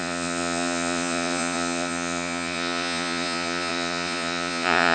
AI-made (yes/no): yes